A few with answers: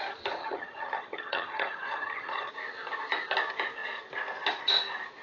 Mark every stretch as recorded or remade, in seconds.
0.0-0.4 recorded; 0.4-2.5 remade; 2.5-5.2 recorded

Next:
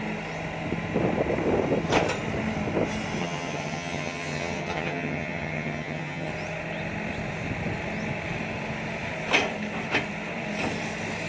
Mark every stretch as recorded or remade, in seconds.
0.0-3.2 recorded; 3.2-6.3 remade; 6.3-11.3 recorded

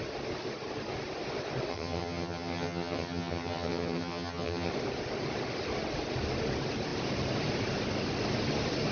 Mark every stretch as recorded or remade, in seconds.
0.0-1.7 recorded; 1.7-4.7 remade; 4.7-8.9 recorded

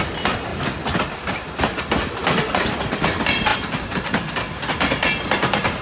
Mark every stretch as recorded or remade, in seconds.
0.0-5.8 recorded

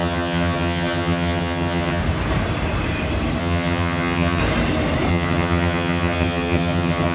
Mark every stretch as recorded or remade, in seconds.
0.0-2.0 remade; 2.0-3.4 recorded; 3.4-4.4 remade; 4.4-5.1 recorded; 5.1-7.1 remade

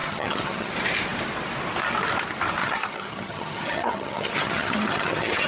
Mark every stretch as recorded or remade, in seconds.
0.0-0.7 remade; 0.7-2.6 recorded; 2.6-5.5 remade

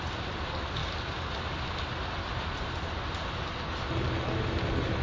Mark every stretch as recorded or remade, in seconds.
0.0-5.0 recorded